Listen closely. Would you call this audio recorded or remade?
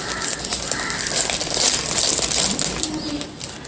recorded